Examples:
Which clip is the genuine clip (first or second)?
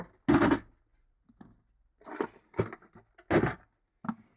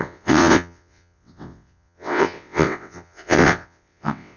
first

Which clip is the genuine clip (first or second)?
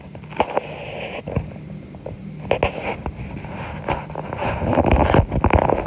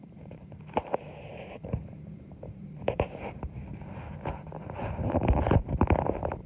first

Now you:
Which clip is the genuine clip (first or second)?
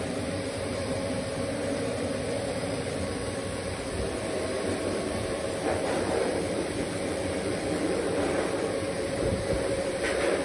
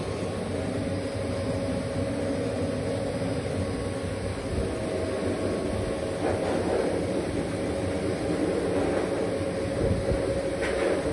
second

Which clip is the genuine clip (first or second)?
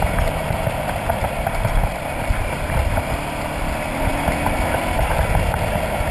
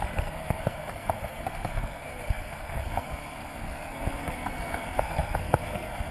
first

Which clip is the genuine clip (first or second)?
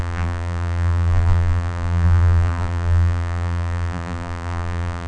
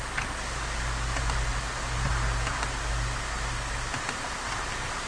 second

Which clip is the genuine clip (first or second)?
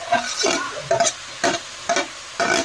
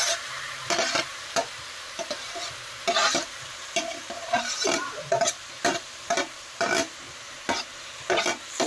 first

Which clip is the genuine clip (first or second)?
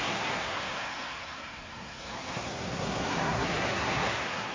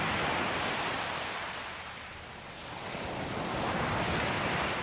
second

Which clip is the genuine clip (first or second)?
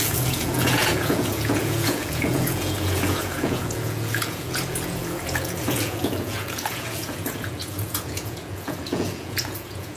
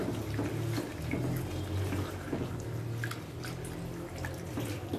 second